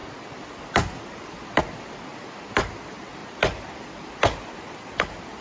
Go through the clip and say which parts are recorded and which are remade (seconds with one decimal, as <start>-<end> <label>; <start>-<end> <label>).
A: 0.0-5.4 recorded